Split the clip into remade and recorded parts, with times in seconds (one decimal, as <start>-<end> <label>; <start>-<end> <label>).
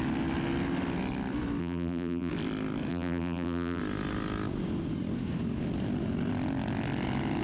0.0-1.6 recorded; 1.6-2.3 remade; 2.3-2.9 recorded; 2.9-3.8 remade; 3.8-7.4 recorded